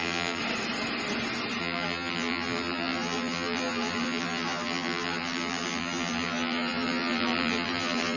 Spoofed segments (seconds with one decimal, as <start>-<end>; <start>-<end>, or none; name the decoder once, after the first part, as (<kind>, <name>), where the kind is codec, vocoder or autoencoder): 0.0-0.4 (vocoder, BigVGAN v2); 1.6-8.2